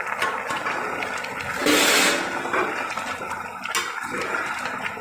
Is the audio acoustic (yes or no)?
yes